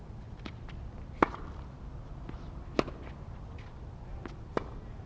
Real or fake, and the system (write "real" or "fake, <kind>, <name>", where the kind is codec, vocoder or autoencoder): real